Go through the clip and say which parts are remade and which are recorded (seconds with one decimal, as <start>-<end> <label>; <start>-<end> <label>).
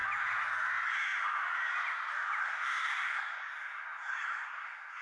0.0-2.4 recorded; 2.4-5.0 remade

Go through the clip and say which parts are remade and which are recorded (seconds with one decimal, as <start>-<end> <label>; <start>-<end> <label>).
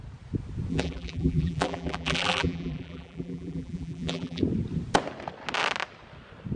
0.0-0.7 recorded; 0.7-4.4 remade; 4.4-6.6 recorded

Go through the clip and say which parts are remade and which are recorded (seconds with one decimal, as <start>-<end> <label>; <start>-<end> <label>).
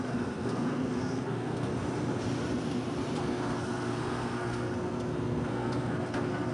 0.0-1.7 remade; 1.7-3.2 recorded; 3.2-6.5 remade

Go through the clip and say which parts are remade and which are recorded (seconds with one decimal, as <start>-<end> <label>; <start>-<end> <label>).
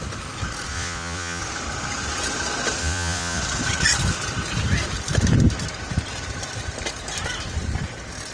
0.0-0.7 recorded; 0.7-1.4 remade; 1.4-2.8 recorded; 2.8-3.4 remade; 3.4-8.3 recorded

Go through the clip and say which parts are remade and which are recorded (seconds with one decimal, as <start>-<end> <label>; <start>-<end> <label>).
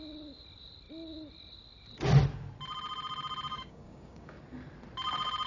0.0-3.5 recorded; 3.5-4.4 remade; 4.4-5.5 recorded